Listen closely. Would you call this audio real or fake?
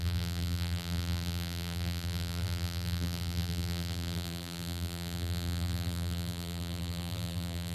fake